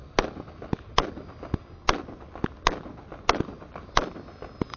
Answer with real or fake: real